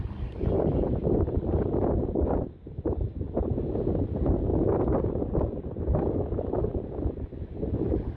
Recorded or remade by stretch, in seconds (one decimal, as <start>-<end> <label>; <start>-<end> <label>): 0.0-8.2 recorded